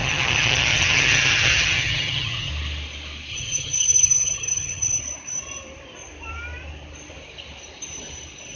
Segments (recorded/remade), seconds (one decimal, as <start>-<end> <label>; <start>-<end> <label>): 0.0-2.5 remade; 2.5-3.3 recorded; 3.3-5.0 remade; 5.0-8.6 recorded